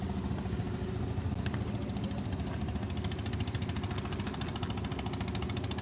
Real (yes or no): yes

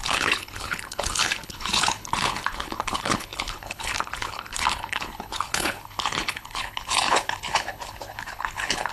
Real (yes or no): no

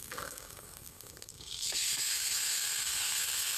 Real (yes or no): no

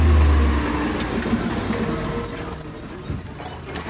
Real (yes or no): yes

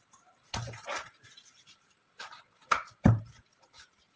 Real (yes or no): no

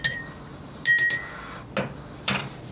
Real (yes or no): yes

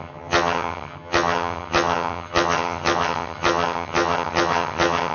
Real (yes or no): no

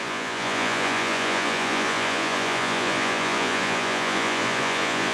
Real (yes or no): no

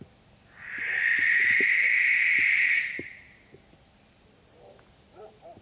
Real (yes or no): yes